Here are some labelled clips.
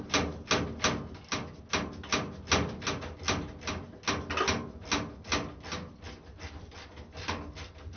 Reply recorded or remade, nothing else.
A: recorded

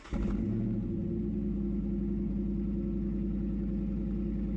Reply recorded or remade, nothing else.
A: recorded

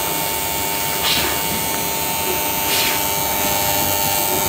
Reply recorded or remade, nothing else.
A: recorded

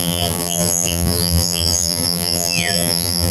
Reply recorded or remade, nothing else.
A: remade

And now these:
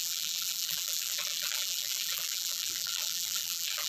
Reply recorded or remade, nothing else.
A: remade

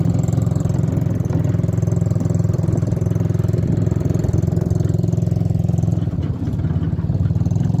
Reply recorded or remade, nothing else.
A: recorded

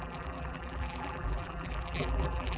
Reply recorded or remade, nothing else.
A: remade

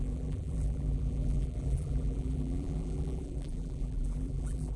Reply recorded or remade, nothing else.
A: remade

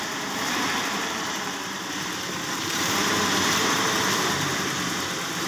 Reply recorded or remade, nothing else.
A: remade